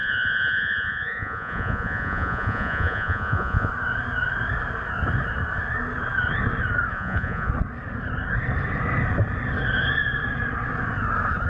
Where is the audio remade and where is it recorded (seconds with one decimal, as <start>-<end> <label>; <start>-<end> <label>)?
0.0-3.7 remade; 3.7-6.9 recorded; 6.9-7.5 remade; 7.5-11.5 recorded